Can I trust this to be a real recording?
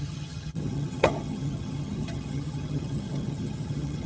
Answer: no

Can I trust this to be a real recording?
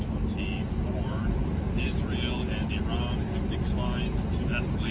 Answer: yes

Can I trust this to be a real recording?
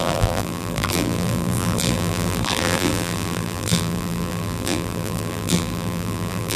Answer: no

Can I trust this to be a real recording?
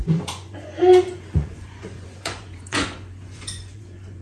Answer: no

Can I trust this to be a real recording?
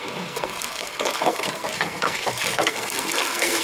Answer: no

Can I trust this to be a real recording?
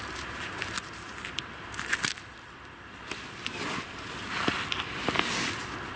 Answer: yes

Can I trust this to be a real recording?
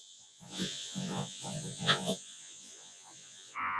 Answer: no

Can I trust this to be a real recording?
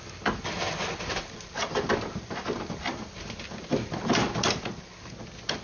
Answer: yes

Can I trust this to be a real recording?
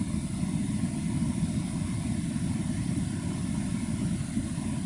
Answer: yes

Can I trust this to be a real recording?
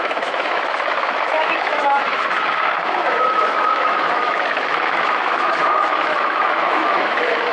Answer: no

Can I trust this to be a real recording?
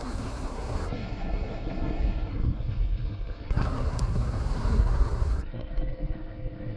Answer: no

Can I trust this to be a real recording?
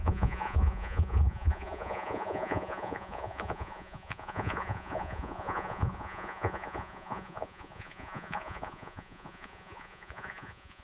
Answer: no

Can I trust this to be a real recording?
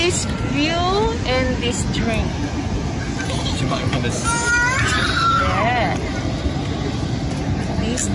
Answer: yes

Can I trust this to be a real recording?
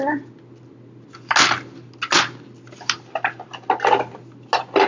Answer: yes